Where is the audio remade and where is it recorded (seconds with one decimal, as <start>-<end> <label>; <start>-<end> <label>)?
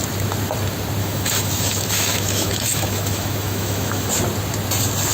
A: 0.0-1.0 recorded; 1.0-4.1 remade; 4.1-5.1 recorded